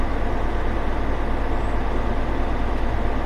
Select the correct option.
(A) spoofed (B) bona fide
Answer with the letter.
B